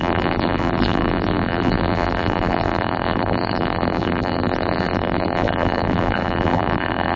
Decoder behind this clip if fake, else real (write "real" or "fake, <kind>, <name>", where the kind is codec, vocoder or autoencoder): fake, vocoder, BigVGAN v2